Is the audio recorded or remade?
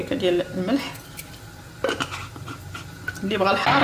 recorded